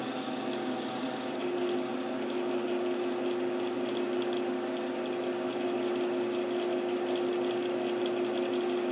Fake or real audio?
real